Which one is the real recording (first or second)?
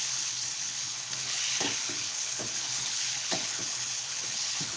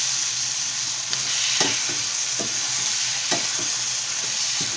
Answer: second